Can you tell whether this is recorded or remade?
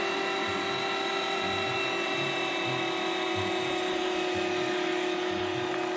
recorded